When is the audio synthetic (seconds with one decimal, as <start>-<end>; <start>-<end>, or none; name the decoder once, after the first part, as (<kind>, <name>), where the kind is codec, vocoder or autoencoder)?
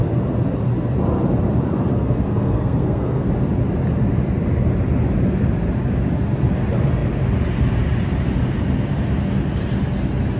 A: 1.9-3.3 (codec, SNAC)